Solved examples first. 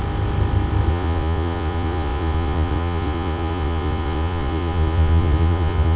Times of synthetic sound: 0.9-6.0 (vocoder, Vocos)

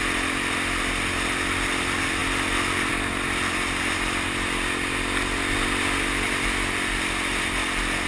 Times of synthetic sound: none